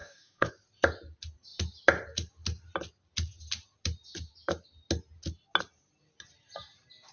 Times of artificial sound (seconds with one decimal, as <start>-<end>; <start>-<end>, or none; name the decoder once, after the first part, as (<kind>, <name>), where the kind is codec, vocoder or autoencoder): 0.0-0.5 (codec, DAC)